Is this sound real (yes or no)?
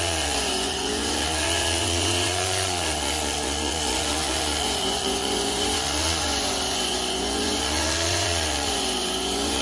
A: no